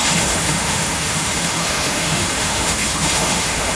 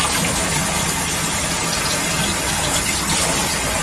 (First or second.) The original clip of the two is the second